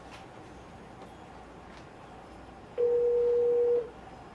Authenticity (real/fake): real